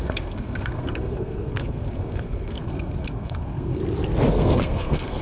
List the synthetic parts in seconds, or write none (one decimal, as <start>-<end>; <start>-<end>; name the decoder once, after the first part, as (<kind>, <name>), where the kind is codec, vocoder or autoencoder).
0.0-3.8 (codec, SNAC); 4.3-5.2